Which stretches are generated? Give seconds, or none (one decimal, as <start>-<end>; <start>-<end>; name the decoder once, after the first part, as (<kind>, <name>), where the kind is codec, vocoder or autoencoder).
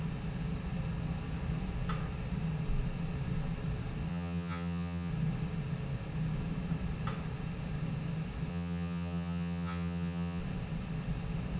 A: 4.1-5.1 (vocoder, HiFi-GAN); 8.5-10.4